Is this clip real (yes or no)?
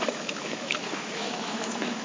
no